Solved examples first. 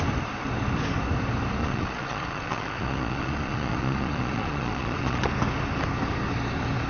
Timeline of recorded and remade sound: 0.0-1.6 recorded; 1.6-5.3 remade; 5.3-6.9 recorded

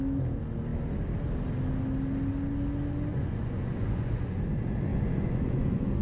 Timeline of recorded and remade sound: 0.0-3.1 recorded; 3.1-4.4 remade; 4.4-4.9 recorded; 4.9-6.0 remade

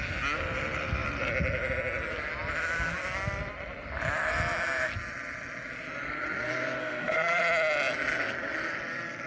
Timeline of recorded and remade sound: 0.0-6.8 recorded; 6.8-7.4 remade; 7.4-9.3 recorded

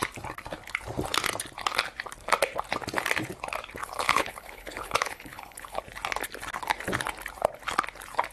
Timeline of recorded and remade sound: 0.0-3.8 recorded; 3.8-5.8 remade; 5.8-8.3 recorded

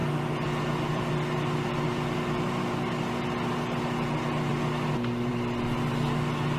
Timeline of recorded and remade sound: 0.0-6.6 recorded

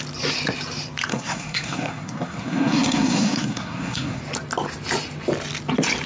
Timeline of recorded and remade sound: 0.0-1.1 recorded; 1.1-4.2 remade; 4.2-6.1 recorded